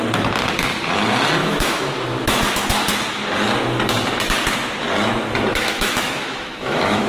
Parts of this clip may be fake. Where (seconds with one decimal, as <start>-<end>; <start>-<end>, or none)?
1.4-2.5; 5.5-7.1